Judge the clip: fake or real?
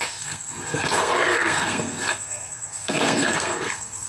fake